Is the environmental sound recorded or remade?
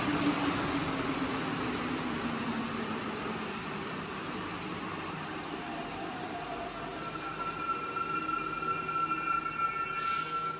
recorded